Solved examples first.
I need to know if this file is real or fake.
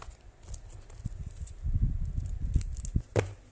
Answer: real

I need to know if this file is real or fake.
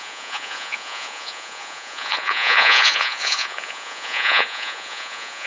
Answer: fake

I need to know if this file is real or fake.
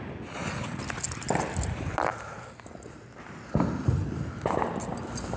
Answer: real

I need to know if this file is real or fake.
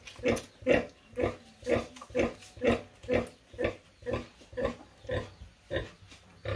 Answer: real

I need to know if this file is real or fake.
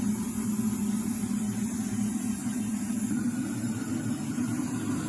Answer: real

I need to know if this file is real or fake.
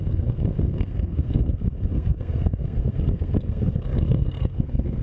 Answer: fake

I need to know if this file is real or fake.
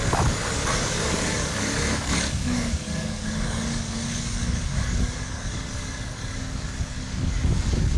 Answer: fake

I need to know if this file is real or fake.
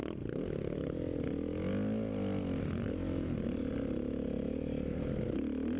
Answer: real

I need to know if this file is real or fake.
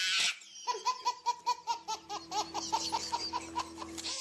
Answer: real